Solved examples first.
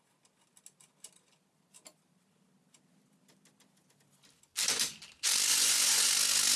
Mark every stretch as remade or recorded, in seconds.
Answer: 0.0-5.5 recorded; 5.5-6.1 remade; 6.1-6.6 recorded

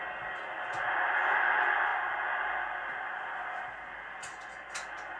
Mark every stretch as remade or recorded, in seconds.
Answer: 0.0-5.2 recorded

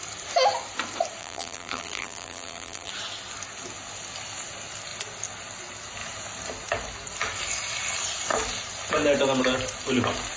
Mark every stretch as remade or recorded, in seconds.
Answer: 0.0-1.2 recorded; 1.2-2.9 remade; 2.9-10.4 recorded

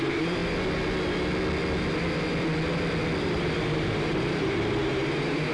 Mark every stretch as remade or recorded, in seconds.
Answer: 0.0-0.4 remade; 0.4-3.2 recorded; 3.2-5.5 remade

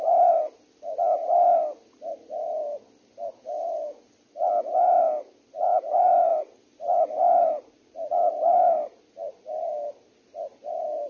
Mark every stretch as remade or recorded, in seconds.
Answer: 0.0-11.1 recorded

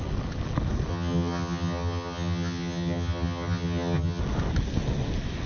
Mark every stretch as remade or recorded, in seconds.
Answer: 0.0-0.9 recorded; 0.9-4.2 remade; 4.2-5.5 recorded

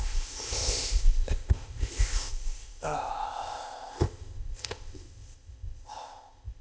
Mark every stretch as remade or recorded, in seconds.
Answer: 0.0-6.6 remade

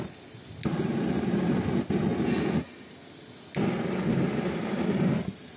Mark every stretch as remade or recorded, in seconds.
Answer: 0.0-5.6 recorded